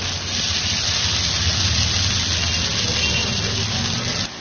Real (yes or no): yes